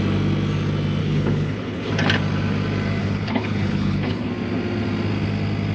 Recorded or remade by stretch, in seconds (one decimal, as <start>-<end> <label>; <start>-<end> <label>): 0.0-1.0 recorded; 1.0-1.9 remade; 1.9-3.0 recorded; 3.0-4.3 remade; 4.3-5.7 recorded